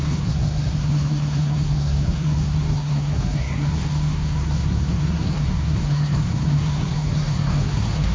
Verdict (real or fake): fake